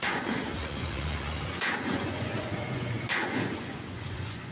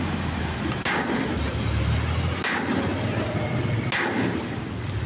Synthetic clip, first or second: first